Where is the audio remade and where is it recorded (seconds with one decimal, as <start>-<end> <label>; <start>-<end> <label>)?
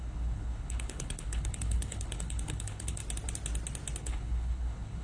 0.0-3.0 remade; 3.0-4.0 recorded; 4.0-5.0 remade